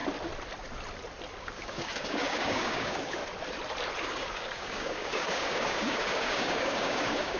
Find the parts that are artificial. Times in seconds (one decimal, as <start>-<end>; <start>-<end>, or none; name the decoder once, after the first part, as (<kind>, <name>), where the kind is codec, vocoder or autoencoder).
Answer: 1.4-3.2 (codec, DAC); 4.0-7.4